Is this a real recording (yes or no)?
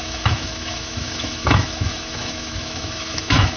no